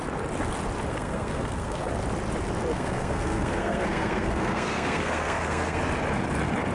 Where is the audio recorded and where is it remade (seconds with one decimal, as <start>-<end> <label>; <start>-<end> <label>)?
0.0-0.9 recorded; 0.9-1.9 remade; 1.9-2.7 recorded; 2.7-5.8 remade; 5.8-6.7 recorded